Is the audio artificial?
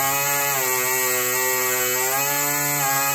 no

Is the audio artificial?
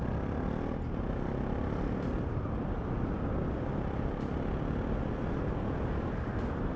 no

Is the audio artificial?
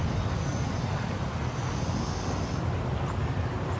no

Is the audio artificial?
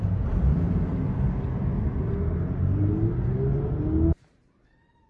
no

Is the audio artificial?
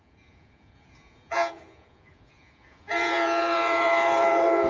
yes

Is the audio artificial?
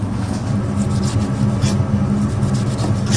no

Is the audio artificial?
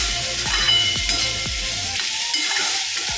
yes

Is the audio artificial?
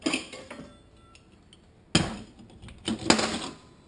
no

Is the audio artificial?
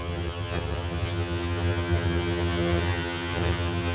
yes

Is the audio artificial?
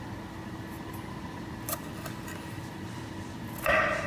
no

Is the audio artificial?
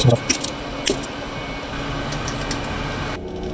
no